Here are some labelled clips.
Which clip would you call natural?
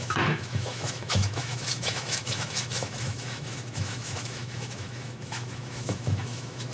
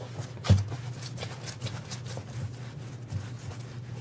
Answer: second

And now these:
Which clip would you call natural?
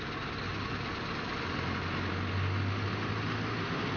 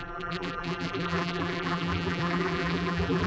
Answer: first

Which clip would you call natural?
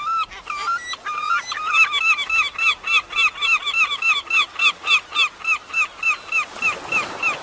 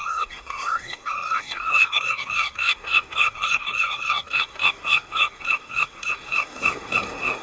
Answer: first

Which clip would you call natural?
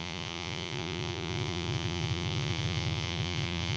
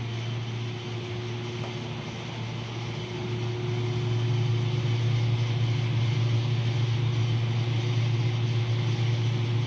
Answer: second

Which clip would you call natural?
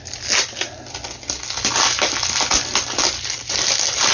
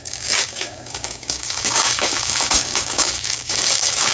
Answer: first